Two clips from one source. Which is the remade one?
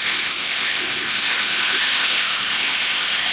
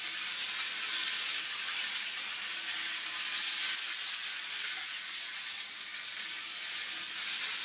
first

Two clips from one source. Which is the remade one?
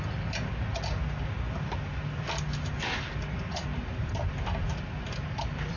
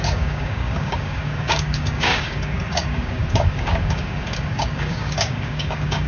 second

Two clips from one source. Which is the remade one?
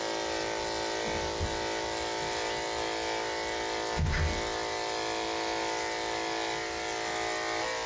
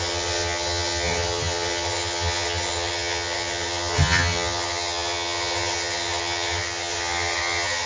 second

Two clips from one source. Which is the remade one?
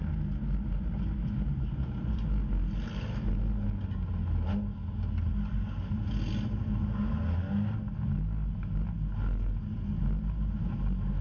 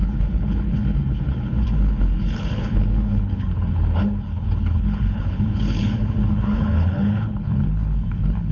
second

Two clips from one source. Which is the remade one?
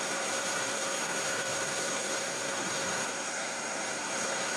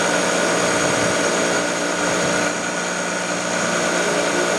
first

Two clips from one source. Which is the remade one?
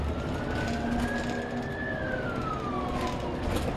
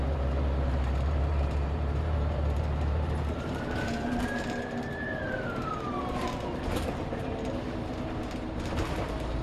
second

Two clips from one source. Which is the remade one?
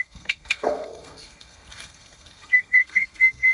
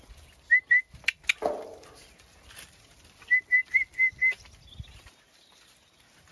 first